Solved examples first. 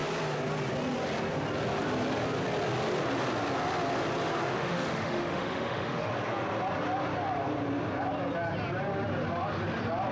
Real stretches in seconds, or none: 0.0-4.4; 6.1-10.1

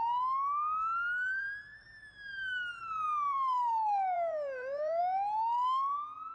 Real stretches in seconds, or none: 0.0-1.2; 5.0-6.3